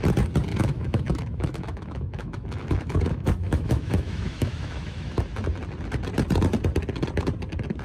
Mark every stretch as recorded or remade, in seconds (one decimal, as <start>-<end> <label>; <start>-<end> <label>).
0.0-0.5 recorded; 0.5-5.2 remade; 5.2-7.8 recorded